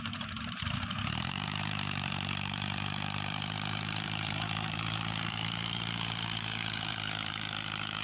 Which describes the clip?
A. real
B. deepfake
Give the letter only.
B